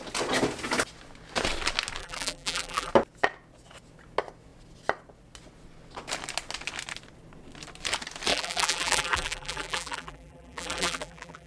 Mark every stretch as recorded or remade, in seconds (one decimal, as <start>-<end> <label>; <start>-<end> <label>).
0.0-2.0 recorded; 2.0-2.9 remade; 2.9-8.3 recorded; 8.3-11.5 remade